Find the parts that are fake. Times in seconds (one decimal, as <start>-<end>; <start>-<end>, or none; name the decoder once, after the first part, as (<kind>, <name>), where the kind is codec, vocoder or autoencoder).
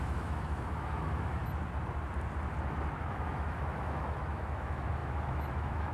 0.0-1.4 (autoencoder, DAC-VAE); 3.0-5.9